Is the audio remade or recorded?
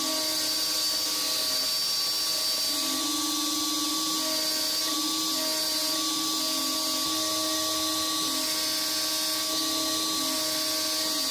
recorded